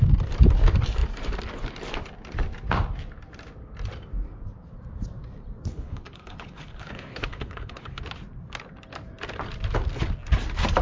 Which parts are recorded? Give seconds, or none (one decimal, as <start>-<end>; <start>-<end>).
0.0-5.7; 8.0-10.8